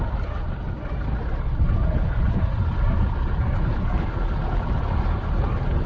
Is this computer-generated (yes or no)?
no